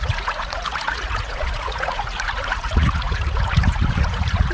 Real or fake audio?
fake